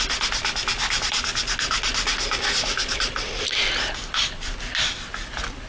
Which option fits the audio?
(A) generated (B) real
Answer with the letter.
B